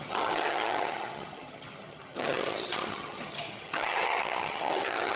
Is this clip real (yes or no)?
no